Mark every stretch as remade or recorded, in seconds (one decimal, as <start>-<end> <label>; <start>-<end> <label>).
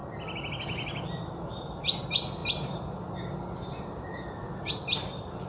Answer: 0.0-5.5 recorded